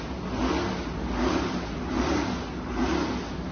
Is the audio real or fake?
real